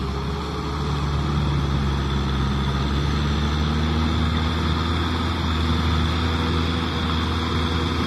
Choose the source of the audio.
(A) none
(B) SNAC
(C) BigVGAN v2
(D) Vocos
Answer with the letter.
A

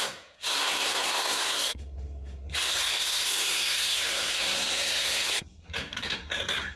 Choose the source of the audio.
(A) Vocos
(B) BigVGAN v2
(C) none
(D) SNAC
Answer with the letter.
D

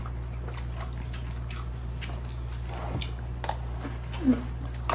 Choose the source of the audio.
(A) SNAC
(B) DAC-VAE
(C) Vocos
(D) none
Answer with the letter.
D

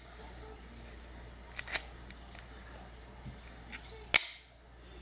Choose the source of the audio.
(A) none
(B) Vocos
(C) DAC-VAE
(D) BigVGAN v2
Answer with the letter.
A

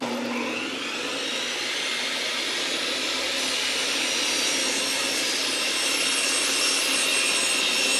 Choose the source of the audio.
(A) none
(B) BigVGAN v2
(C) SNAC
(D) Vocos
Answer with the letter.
A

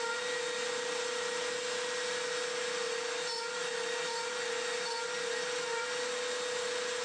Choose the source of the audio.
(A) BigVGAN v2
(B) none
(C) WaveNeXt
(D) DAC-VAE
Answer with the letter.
B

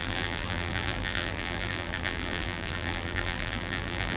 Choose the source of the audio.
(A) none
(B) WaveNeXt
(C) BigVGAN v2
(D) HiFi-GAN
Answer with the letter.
C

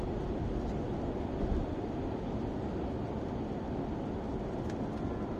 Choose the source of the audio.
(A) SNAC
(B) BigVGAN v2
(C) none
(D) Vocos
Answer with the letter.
C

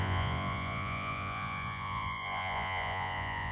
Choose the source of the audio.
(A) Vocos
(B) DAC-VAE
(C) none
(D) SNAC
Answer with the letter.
A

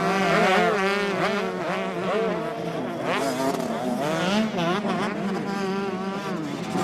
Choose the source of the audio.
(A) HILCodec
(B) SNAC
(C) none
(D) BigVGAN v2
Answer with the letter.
C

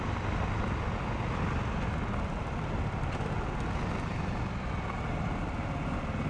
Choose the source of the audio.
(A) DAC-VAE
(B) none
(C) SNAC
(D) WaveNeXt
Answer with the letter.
B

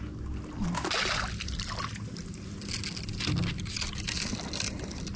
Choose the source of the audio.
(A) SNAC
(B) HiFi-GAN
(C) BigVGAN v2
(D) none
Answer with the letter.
D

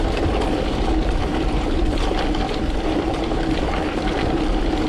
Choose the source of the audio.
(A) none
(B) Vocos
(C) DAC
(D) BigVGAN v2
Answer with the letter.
D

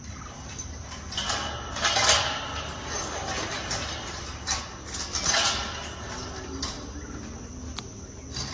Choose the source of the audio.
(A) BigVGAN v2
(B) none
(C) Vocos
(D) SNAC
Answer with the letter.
B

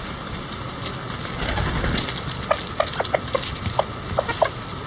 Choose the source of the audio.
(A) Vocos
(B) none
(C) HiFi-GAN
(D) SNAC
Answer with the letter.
B